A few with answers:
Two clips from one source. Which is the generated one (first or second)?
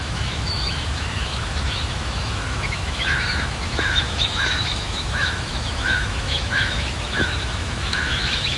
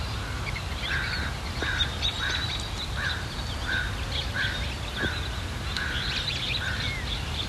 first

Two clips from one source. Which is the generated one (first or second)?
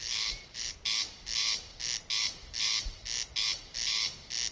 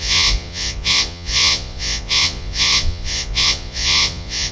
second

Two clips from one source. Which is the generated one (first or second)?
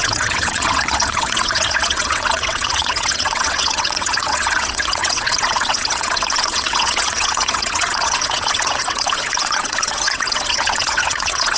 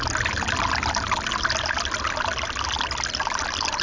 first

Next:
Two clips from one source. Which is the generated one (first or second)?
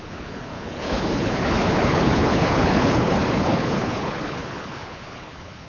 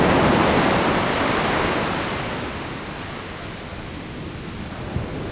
first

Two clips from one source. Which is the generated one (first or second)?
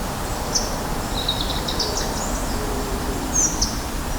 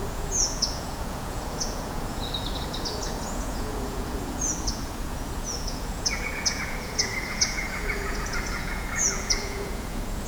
second